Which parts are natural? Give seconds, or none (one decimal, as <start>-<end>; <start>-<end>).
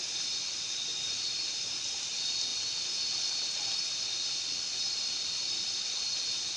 0.0-6.6